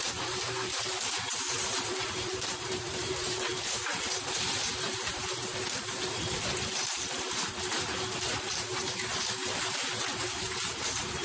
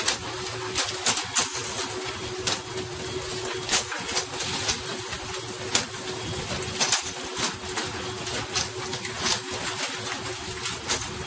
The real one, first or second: second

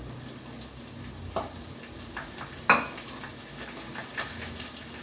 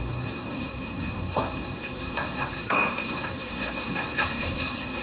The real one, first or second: first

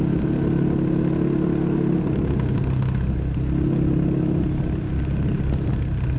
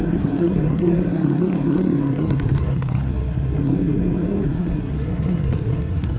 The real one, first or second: first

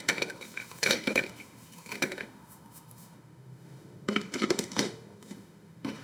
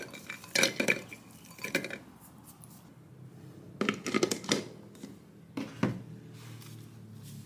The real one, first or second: second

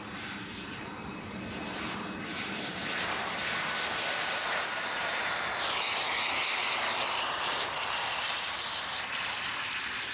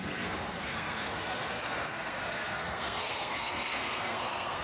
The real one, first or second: first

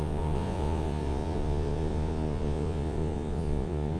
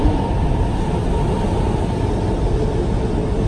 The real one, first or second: second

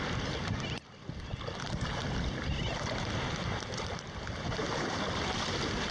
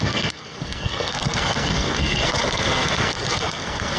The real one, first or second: first